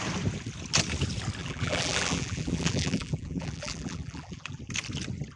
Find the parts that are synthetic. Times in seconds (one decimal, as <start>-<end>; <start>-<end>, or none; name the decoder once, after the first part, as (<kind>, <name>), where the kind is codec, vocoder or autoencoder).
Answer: 1.4-4.6 (vocoder, BigVGAN v2)

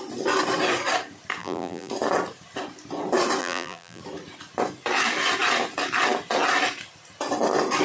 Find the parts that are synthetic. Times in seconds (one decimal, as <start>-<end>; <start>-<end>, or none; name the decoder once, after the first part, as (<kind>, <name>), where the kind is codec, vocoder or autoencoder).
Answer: 1.4-1.9 (vocoder, BigVGAN v2); 3.4-4.0

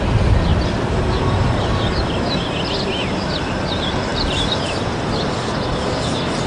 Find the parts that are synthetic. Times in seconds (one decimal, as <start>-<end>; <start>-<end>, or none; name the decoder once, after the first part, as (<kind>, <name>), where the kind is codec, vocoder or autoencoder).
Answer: 0.5-1.8 (vocoder, BigVGAN v2)

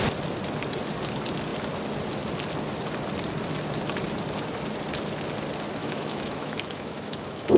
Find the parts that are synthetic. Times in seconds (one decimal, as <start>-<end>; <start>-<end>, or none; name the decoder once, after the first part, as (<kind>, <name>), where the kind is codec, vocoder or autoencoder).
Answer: 5.8-7.6 (autoencoder, DAC-VAE)